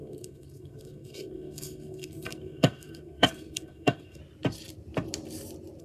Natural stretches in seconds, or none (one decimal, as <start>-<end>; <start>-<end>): 4.2-5.8